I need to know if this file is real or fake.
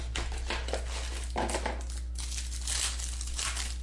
real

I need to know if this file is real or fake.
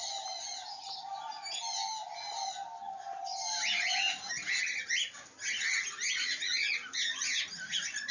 real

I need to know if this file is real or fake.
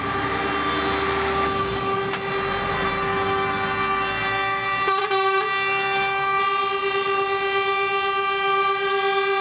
real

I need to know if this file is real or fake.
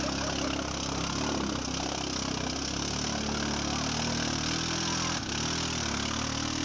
real